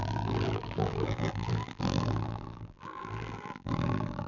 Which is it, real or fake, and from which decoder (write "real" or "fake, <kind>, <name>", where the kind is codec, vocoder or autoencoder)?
fake, vocoder, BigVGAN v2